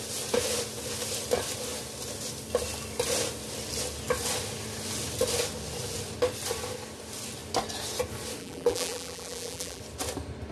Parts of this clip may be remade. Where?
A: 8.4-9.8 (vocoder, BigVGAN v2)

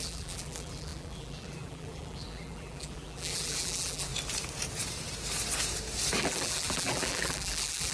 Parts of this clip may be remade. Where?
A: 0.0-4.1 (vocoder, BigVGAN v2); 6.2-7.9

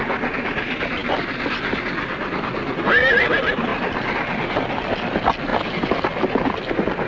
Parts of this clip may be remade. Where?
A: none

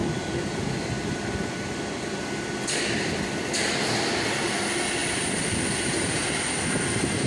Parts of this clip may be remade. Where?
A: none